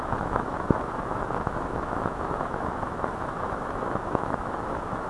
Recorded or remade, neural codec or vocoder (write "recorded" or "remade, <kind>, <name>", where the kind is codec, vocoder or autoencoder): remade, autoencoder, DAC-VAE